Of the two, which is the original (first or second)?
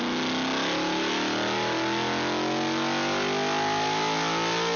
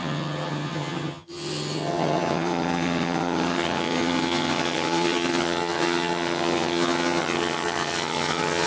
first